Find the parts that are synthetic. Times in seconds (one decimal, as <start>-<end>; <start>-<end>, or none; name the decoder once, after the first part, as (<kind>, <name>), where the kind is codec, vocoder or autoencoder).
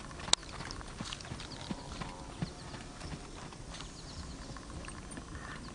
none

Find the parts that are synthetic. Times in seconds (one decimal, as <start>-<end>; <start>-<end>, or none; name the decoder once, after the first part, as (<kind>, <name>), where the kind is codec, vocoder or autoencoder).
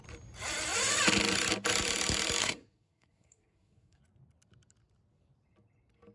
2.4-4.0 (codec, SNAC)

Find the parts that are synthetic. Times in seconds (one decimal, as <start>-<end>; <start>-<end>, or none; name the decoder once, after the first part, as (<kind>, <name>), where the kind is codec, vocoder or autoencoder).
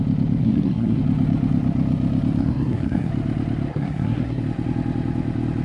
0.4-1.0 (codec, SNAC); 2.4-3.1; 3.7-4.4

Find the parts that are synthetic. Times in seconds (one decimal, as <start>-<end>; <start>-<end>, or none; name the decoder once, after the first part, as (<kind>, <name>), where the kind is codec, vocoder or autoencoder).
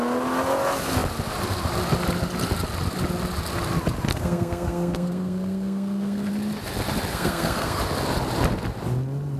4.1-6.3 (codec, SNAC); 7.1-7.8